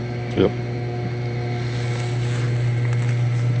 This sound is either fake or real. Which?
fake